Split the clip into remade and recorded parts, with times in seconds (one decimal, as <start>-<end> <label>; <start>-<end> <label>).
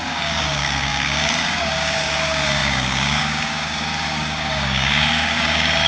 0.0-5.9 remade